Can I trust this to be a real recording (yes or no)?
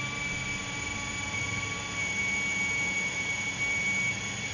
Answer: yes